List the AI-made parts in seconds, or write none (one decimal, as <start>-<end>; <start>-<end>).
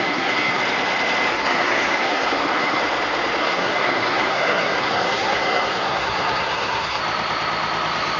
0.0-0.6; 1.3-2.8; 3.4-7.0